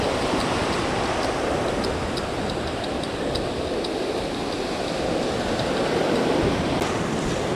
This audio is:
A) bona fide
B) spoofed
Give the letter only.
A